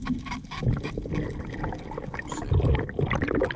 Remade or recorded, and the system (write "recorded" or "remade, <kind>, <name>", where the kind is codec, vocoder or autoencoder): recorded